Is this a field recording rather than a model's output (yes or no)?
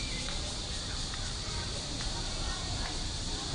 yes